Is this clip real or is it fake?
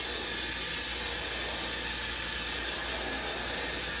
real